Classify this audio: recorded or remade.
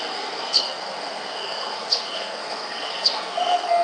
remade